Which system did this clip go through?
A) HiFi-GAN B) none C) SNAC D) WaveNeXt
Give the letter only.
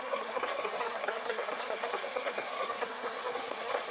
C